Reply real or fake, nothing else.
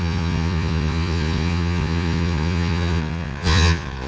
fake